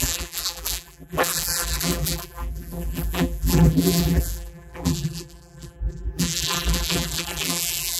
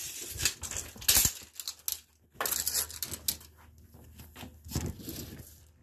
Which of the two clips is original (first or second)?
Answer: second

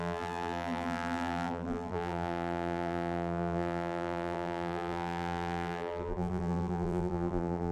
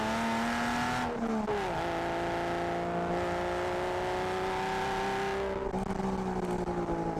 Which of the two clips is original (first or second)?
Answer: second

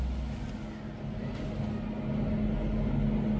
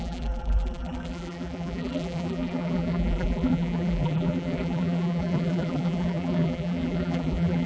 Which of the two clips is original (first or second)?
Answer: first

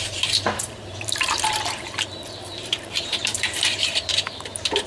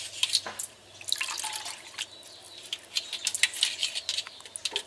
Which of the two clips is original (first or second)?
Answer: second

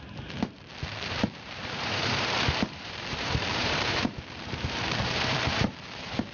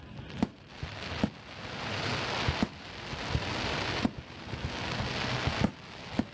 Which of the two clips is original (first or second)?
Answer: second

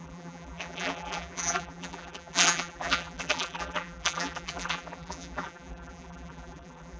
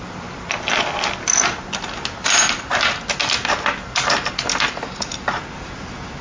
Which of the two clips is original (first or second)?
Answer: second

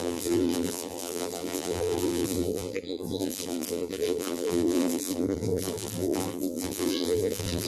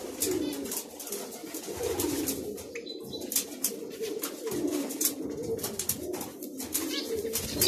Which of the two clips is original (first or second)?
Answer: second